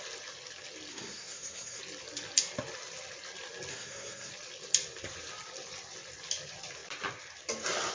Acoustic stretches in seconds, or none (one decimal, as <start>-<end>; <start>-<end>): 0.0-0.9; 1.8-3.7; 4.3-7.9